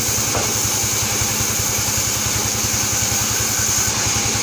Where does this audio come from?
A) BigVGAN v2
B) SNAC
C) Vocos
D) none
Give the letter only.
D